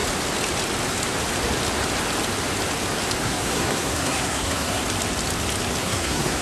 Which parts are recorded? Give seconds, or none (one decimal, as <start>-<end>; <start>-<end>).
0.0-3.2; 4.8-5.8